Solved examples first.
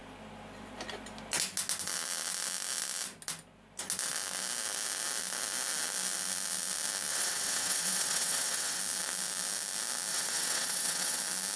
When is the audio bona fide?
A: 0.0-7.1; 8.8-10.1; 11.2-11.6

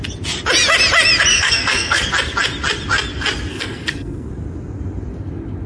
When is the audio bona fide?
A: 0.0-1.3; 2.1-3.5; 4.3-5.7

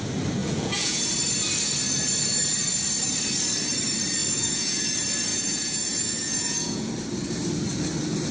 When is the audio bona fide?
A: 0.0-0.4; 1.1-4.2; 4.8-5.3; 6.9-8.3